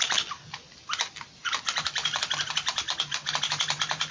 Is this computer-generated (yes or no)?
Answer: no